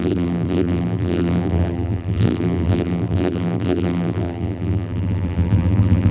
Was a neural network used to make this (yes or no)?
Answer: yes